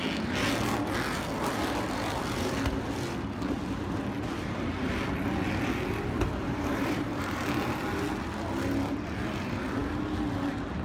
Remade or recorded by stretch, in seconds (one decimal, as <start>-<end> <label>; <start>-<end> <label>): 0.0-6.4 recorded; 6.4-7.4 remade; 7.4-10.8 recorded